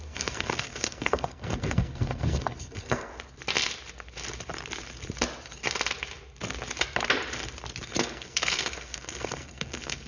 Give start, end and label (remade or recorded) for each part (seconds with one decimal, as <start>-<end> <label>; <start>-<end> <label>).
0.0-3.1 remade; 3.1-7.8 recorded; 7.8-10.1 remade